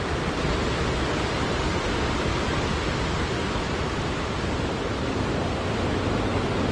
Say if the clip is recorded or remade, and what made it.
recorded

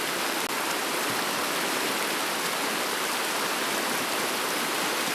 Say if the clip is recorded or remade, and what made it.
recorded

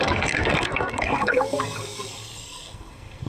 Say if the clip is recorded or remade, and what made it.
remade, codec, SNAC